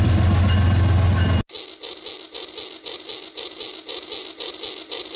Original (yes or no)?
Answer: yes